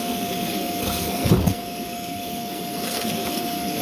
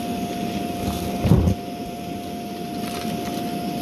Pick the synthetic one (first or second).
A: first